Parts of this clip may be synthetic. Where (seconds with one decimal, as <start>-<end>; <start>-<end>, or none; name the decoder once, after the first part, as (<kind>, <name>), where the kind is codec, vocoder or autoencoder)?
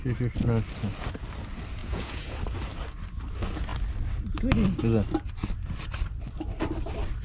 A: 1.8-2.4 (vocoder, Vocos)